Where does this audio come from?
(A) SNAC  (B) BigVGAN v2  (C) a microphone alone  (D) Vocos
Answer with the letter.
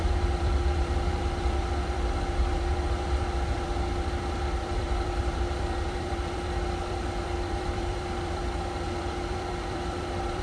B